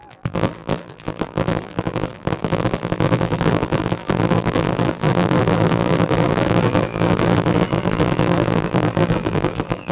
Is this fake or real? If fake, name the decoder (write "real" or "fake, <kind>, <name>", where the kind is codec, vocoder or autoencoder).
fake, vocoder, BigVGAN v2